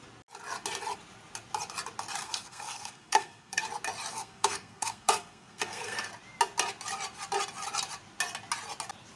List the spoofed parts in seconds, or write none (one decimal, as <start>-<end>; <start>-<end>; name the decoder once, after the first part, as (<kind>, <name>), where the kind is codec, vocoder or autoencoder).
2.2-3.6 (codec, SNAC); 4.1-6.1